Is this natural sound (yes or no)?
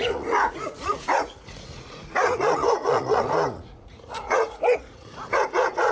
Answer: no